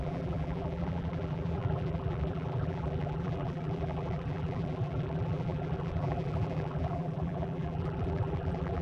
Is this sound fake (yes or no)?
yes